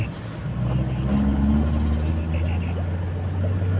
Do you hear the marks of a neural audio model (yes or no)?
no